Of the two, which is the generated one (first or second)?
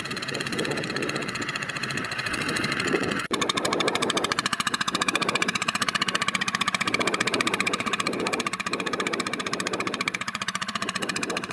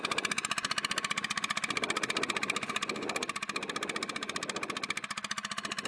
first